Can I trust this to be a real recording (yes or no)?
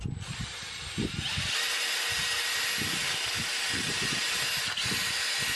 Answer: yes